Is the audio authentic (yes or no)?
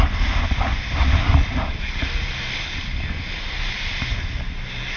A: yes